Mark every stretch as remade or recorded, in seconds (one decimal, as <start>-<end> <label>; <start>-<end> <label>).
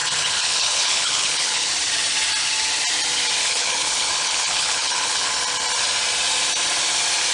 0.0-1.7 remade; 1.7-3.4 recorded; 3.4-5.3 remade; 5.3-7.3 recorded